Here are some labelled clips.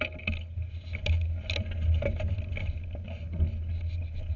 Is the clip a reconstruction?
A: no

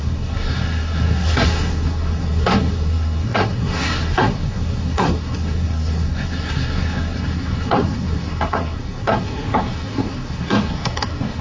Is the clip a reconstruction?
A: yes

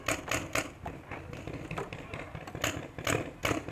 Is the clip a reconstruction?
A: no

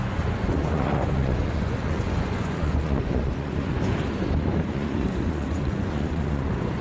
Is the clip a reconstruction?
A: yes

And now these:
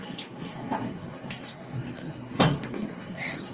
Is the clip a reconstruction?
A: yes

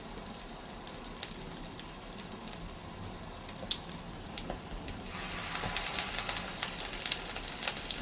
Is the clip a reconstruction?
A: no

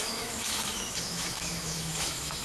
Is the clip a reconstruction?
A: yes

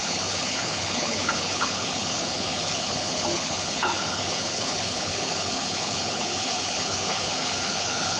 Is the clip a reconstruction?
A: yes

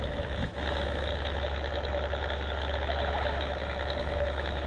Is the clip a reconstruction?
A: yes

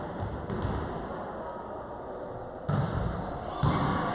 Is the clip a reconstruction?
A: no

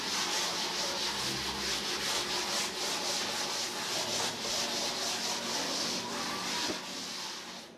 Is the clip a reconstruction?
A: no